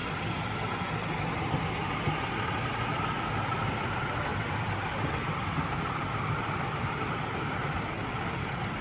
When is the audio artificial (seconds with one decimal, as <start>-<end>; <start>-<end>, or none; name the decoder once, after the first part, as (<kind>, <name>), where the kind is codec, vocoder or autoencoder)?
none